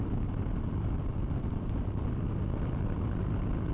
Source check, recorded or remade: recorded